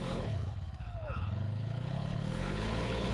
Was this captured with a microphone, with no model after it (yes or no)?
no